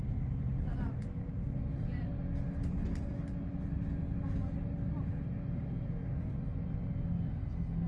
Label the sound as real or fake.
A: real